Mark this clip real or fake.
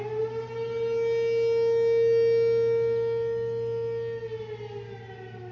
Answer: real